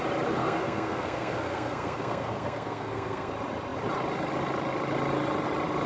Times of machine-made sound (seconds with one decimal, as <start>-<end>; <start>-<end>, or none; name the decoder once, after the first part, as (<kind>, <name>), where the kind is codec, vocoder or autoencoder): 0.4-3.3 (codec, SNAC)